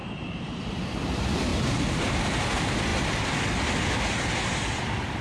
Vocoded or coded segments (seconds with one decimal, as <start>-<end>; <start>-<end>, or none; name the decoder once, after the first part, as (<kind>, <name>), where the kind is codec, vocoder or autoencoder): 0.0-0.8 (vocoder, BigVGAN v2); 1.5-2.5